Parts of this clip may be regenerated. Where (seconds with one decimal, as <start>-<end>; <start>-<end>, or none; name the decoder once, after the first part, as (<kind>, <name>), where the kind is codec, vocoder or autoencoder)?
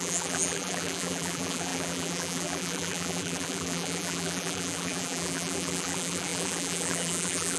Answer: 0.0-7.6 (vocoder, BigVGAN v2)